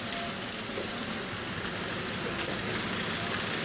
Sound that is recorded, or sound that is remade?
recorded